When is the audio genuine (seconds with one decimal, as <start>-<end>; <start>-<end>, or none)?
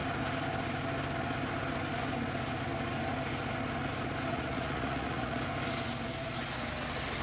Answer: 0.0-4.3; 5.4-7.2